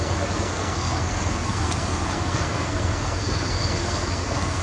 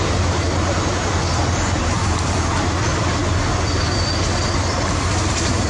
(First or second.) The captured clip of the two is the second